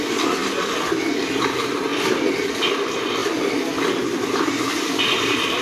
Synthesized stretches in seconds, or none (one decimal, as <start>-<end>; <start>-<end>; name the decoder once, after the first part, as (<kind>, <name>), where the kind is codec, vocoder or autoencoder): none